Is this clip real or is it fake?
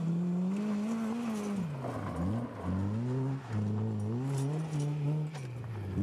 real